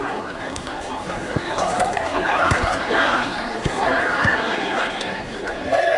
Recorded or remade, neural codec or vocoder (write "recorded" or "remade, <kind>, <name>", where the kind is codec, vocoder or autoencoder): remade, codec, SNAC